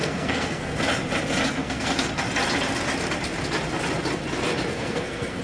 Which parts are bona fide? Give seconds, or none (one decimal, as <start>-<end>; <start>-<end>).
0.8-1.6; 2.1-4.7